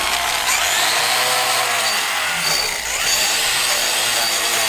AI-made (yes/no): no